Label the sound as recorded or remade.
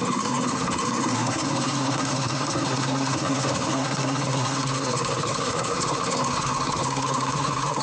remade